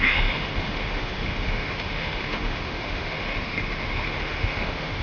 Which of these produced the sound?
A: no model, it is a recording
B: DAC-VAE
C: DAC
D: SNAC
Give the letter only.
B